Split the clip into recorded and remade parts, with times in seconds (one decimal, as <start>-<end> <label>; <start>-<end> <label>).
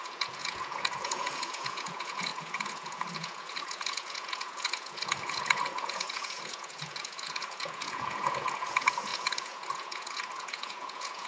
0.0-11.3 remade